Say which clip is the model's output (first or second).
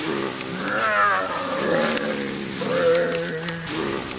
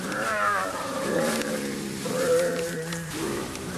second